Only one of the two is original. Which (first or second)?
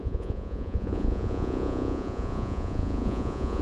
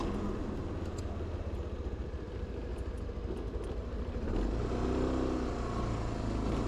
second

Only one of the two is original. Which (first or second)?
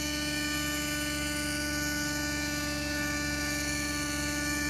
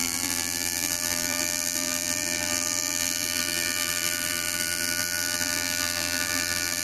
first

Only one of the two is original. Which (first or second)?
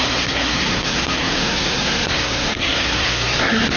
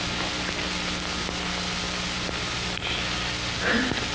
second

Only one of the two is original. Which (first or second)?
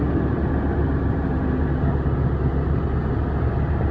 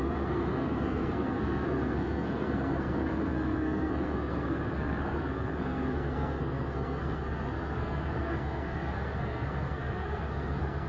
first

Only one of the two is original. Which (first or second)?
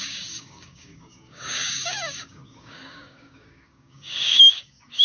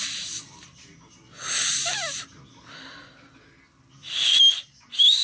second